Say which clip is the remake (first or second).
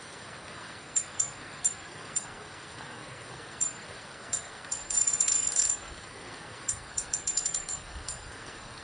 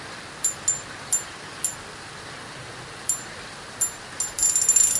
first